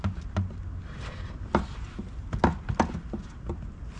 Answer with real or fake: real